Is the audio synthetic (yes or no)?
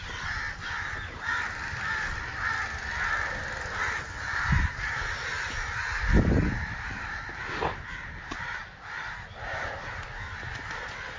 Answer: no